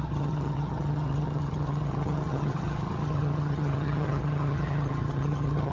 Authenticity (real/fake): fake